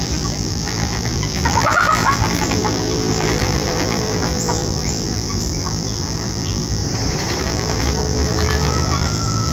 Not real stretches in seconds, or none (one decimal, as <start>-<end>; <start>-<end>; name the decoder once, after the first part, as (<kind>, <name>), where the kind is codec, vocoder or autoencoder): 0.0-6.8 (vocoder, BigVGAN v2); 7.4-9.5